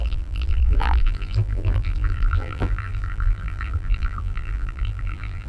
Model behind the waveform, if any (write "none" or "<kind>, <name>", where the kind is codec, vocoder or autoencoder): vocoder, BigVGAN v2